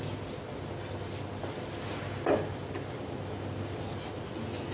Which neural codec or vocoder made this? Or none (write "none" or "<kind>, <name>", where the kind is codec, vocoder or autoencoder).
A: none